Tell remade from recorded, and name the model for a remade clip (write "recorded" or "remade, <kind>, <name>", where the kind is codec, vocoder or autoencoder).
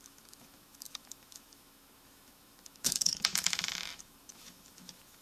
remade, autoencoder, DAC-VAE